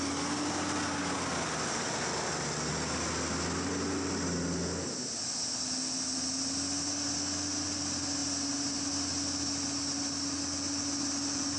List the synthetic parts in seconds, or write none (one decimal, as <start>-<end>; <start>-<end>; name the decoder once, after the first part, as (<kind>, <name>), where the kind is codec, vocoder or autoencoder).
none